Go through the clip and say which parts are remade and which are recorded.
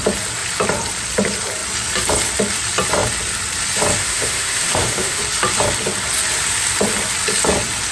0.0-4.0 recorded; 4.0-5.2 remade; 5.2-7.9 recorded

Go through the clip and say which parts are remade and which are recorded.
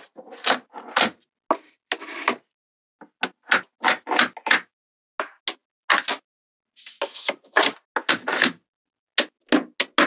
0.0-10.1 recorded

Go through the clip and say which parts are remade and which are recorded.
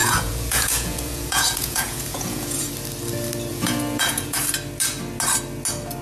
0.0-2.7 remade; 2.7-3.5 recorded; 3.5-4.4 remade; 4.4-6.0 recorded